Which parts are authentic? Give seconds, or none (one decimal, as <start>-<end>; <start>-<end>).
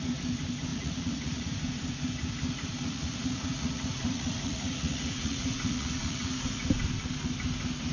0.0-0.7; 1.6-2.8; 6.7-7.9